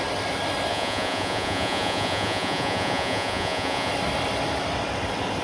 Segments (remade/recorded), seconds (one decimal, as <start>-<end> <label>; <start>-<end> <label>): 0.0-0.7 recorded; 0.7-3.9 remade; 3.9-5.4 recorded